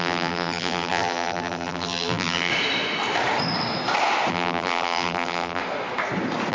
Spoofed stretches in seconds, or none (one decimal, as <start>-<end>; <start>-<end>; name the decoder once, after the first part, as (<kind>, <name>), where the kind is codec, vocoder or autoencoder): 0.0-2.5 (vocoder, BigVGAN v2); 4.3-5.6